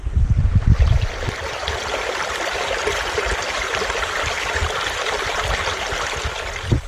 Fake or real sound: real